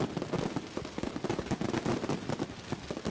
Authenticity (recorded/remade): recorded